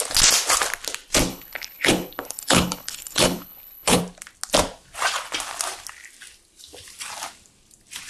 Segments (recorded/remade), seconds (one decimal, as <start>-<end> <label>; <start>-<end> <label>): 0.0-1.3 recorded; 1.3-4.0 remade; 4.0-8.1 recorded

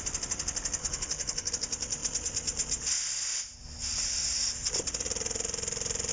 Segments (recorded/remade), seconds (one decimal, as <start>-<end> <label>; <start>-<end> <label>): 0.0-0.8 recorded; 0.8-1.5 remade; 1.5-6.1 recorded

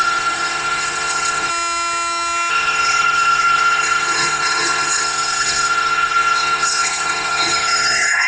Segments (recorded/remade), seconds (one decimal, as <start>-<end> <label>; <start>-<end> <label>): 0.0-1.5 remade; 1.5-2.5 recorded; 2.5-8.3 remade

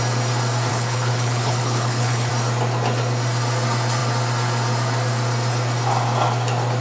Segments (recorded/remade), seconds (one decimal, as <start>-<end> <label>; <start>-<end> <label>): 0.0-0.7 recorded; 0.7-2.3 remade; 2.3-6.8 recorded

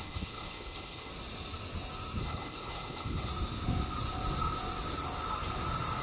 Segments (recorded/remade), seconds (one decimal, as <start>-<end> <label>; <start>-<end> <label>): 0.0-1.1 remade; 1.1-2.2 recorded; 2.2-3.3 remade; 3.3-6.0 recorded

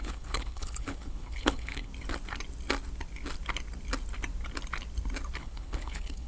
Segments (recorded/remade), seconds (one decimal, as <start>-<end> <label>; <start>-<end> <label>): 0.0-1.9 remade; 1.9-5.4 recorded; 5.4-6.3 remade